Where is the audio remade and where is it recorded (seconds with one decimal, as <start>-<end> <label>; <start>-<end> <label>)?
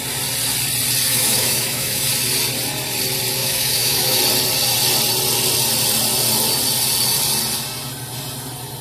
0.0-1.1 recorded; 1.1-2.1 remade; 2.1-3.4 recorded; 3.4-4.2 remade; 4.2-8.8 recorded